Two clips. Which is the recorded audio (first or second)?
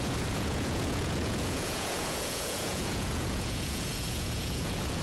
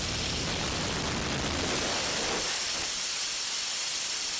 second